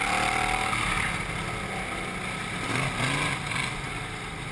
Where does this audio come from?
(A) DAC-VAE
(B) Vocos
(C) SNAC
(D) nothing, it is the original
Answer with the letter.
D